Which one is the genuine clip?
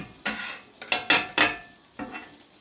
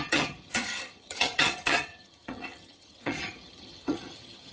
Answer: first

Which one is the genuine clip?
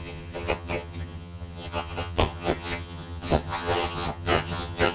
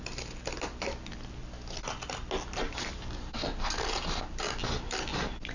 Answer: second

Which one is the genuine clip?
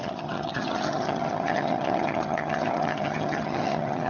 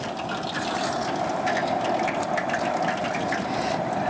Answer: second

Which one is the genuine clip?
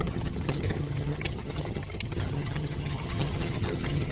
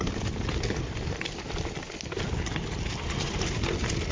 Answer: second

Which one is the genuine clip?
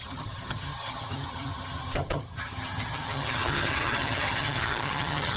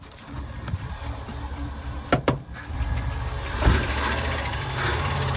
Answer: second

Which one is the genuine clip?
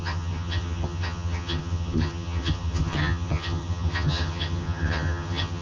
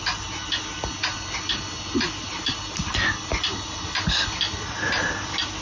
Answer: second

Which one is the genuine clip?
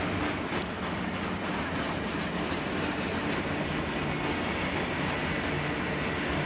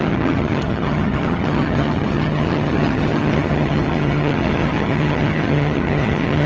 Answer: first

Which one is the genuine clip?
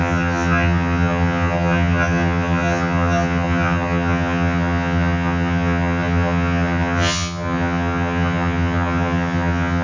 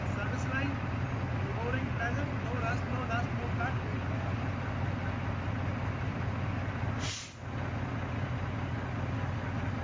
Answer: second